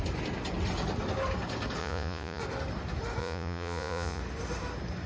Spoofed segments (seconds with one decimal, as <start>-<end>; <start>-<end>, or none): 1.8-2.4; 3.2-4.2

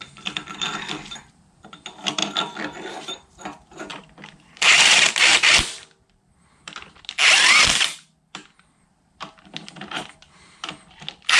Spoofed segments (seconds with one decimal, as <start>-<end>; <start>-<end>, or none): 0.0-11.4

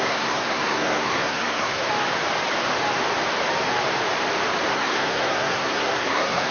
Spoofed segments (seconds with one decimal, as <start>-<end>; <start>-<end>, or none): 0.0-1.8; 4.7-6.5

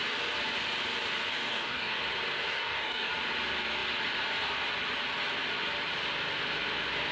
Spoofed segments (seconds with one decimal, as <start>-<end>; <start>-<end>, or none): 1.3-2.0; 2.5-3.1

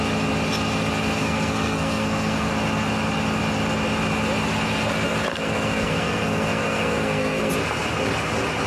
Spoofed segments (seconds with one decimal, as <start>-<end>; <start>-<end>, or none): 1.2-2.5; 5.3-7.5